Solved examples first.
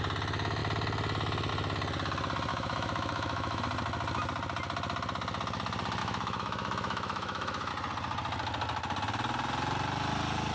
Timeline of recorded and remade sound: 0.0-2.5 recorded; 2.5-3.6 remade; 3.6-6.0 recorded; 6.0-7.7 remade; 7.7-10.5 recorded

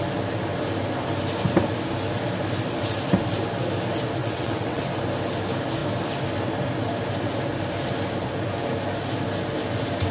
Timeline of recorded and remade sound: 0.0-4.2 recorded; 4.2-4.8 remade; 4.8-10.1 recorded